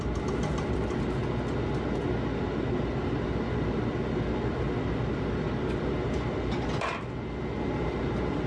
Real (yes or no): yes